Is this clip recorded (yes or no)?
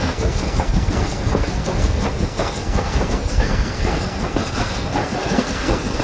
no